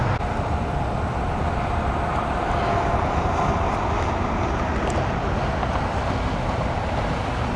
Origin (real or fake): real